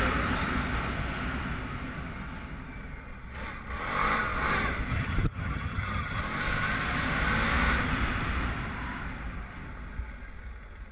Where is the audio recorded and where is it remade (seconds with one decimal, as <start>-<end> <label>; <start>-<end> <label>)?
0.0-4.9 recorded; 4.9-6.2 remade; 6.2-10.9 recorded